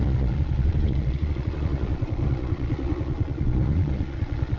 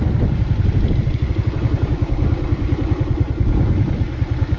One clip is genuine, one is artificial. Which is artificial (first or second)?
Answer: first